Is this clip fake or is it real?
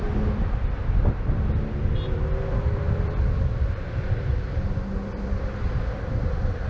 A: fake